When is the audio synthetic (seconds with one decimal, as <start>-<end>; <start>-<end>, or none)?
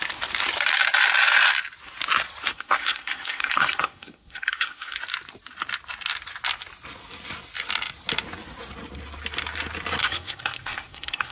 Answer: 2.5-5.0; 10.0-11.3